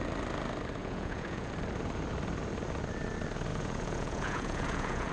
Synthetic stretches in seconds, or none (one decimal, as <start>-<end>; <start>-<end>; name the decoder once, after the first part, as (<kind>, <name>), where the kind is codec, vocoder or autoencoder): 0.8-1.5 (vocoder, Vocos); 3.5-5.1